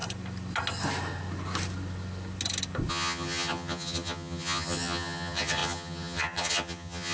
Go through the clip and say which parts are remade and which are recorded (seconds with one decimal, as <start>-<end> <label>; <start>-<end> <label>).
0.0-2.9 recorded; 2.9-7.1 remade